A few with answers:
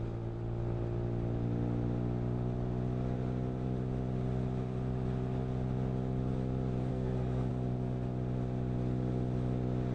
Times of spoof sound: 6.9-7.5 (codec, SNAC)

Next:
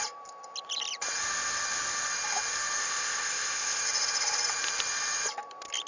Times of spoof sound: 2.8-3.8 (codec, ZipCodec)

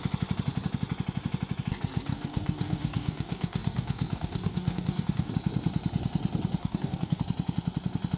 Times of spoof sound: 2.1-5.3 (codec, DAC); 6.6-7.2

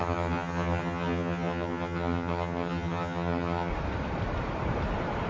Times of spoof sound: 0.0-3.7 (vocoder, HiFi-GAN)

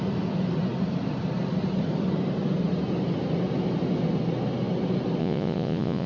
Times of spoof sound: 5.2-6.1 (vocoder, Vocos)

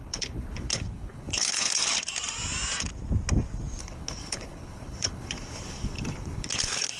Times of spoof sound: 0.0-1.8 (codec, HILCodec); 3.8-7.0

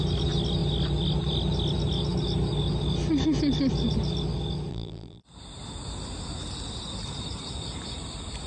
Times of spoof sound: 4.7-5.2 (vocoder, BigVGAN v2)

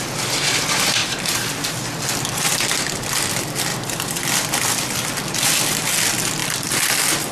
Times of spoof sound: 3.7-5.2 (vocoder, BigVGAN v2); 6.4-7.3